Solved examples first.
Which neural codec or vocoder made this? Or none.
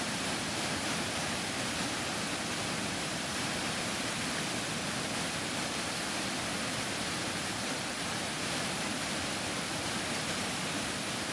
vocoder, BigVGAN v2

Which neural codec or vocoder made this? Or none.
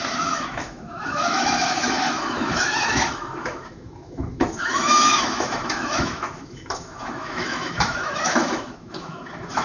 autoencoder, DAC-VAE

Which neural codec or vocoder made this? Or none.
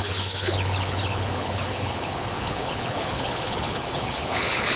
codec, HILCodec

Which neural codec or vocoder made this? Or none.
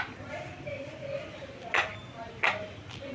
none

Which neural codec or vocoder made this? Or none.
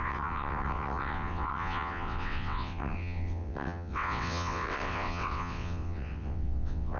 vocoder, WaveNeXt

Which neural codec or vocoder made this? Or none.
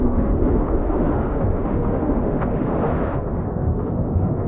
autoencoder, DAC-VAE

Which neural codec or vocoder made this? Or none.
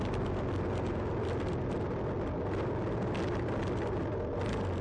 none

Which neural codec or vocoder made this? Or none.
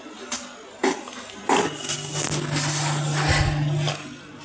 none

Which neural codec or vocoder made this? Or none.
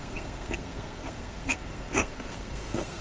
codec, SNAC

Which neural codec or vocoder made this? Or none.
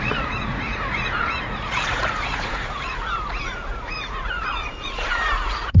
vocoder, Vocos